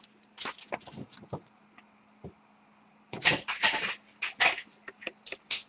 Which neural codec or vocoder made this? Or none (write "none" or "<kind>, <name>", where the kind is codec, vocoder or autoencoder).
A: none